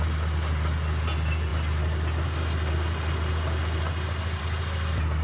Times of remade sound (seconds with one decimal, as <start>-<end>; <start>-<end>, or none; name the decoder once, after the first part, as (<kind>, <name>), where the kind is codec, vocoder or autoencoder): none